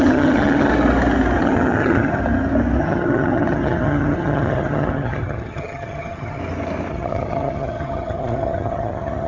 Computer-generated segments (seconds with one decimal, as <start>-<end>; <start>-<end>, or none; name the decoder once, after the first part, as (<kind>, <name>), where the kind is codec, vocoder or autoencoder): 0.0-0.7 (vocoder, HiFi-GAN); 1.4-2.2; 2.8-6.4; 6.9-9.3